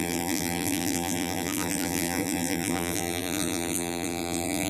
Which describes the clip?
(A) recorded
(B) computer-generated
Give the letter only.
B